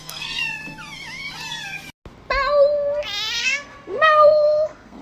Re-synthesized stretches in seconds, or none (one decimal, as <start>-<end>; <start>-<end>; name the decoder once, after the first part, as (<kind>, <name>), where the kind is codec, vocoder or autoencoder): 0.0-0.4 (codec, SNAC); 3.4-5.0